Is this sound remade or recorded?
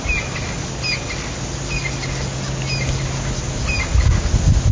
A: recorded